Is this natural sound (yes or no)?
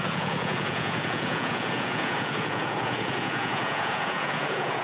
no